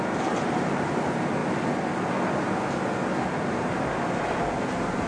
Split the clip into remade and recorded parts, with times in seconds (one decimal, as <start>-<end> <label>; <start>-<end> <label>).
0.0-1.4 remade; 1.4-4.2 recorded; 4.2-5.1 remade